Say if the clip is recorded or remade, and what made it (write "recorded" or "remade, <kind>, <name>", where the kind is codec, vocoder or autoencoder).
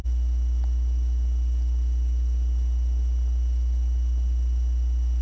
recorded